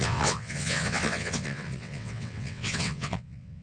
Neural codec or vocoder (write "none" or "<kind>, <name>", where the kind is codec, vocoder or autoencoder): vocoder, WaveNeXt